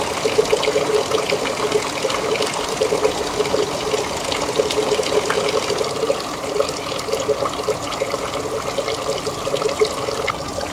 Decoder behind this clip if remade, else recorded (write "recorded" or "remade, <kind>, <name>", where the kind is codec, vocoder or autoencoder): recorded